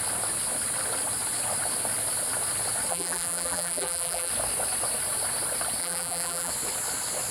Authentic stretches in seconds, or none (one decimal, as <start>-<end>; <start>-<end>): 0.0-2.9; 4.3-5.8; 6.5-7.3